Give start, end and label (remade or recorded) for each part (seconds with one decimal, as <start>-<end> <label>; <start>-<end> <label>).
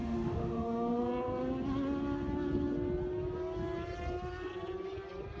0.0-1.0 remade; 1.0-5.4 recorded